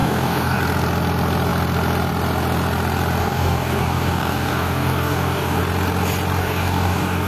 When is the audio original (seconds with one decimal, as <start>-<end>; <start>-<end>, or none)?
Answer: 0.6-3.2; 5.6-6.4